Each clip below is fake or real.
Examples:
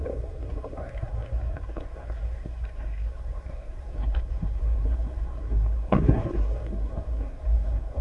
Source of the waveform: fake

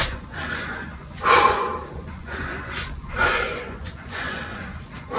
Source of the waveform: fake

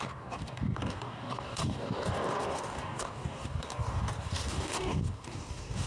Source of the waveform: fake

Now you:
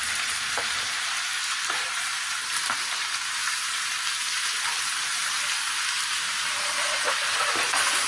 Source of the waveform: fake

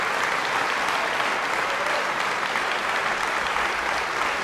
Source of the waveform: real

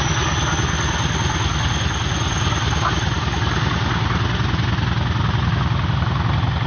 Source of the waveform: real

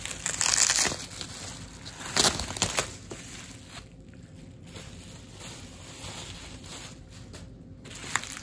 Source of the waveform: real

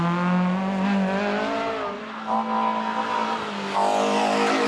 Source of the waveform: real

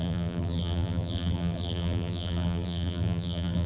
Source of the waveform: fake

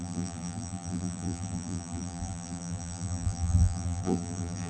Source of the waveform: fake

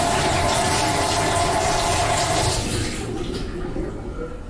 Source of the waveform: real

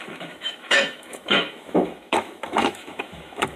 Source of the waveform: fake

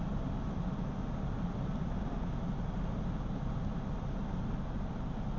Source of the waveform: real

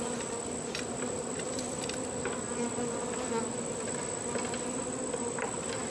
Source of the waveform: real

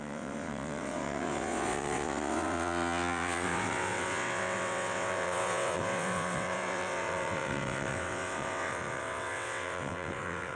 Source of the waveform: fake